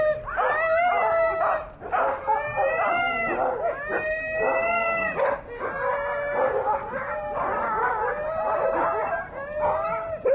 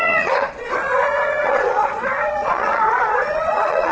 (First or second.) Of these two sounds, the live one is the first